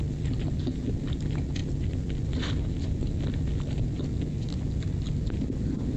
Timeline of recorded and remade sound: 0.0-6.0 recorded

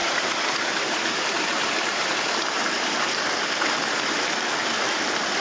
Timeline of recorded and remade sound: 0.0-3.2 remade; 3.2-5.4 recorded

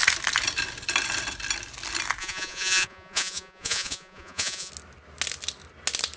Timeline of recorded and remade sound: 0.0-2.2 recorded; 2.2-4.7 remade; 4.7-6.2 recorded

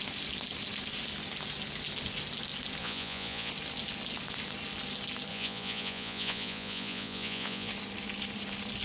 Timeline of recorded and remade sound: 0.0-2.8 recorded; 2.8-3.5 remade; 3.5-5.3 recorded; 5.3-7.7 remade; 7.7-8.8 recorded

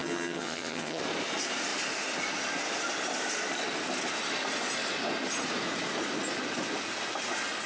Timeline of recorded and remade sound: 0.0-1.0 remade; 1.0-7.7 recorded

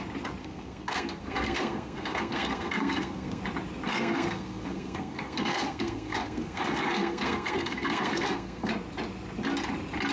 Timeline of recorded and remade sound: 0.0-0.4 recorded; 0.4-3.4 remade; 3.4-3.9 recorded; 3.9-8.7 remade; 8.7-10.1 recorded

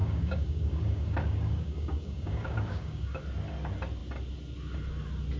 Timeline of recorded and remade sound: 0.0-3.2 remade; 3.2-5.4 recorded